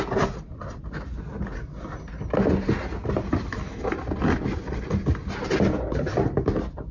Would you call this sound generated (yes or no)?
no